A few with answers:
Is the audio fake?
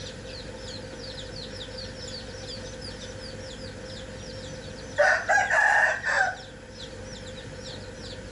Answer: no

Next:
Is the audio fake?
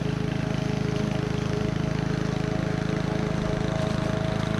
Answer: no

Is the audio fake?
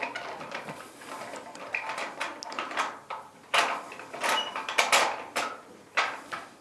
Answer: no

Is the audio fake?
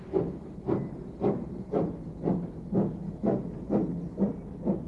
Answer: no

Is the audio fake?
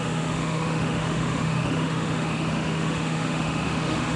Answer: yes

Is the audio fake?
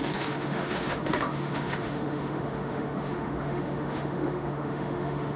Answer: yes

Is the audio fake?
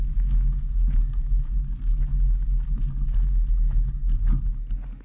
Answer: no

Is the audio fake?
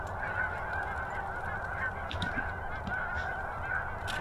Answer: no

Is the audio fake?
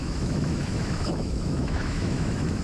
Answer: yes